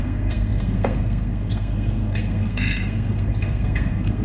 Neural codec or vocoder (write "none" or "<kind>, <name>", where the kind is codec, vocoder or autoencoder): codec, SNAC